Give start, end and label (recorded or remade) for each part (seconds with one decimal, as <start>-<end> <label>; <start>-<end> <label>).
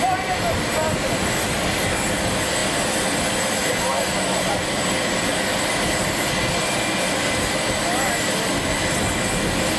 0.0-9.8 recorded